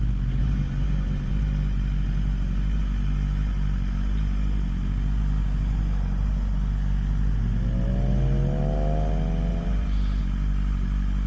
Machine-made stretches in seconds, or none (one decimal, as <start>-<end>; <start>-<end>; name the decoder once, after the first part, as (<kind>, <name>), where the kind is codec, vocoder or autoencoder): 0.4-1.3 (vocoder, BigVGAN v2); 9.5-10.2